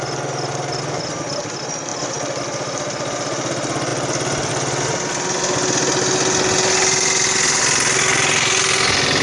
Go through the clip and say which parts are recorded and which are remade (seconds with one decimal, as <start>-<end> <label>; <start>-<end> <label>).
0.0-9.2 recorded